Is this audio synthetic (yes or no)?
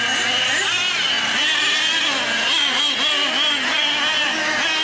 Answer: no